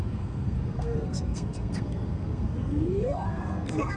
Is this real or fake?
fake